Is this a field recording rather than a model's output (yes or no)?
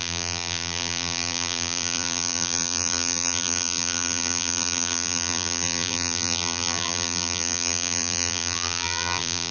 no